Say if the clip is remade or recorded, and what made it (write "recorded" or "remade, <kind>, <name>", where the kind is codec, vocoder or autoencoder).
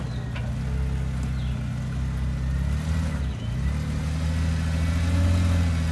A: recorded